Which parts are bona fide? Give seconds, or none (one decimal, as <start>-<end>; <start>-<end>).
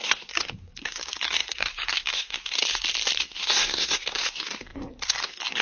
2.6-3.2